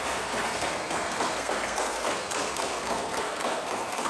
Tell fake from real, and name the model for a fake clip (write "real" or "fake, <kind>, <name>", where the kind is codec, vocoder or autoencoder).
fake, codec, SNAC